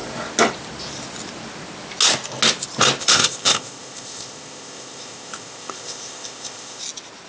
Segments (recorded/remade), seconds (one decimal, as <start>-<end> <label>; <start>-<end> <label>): 0.0-3.0 recorded; 3.0-6.8 remade; 6.8-7.3 recorded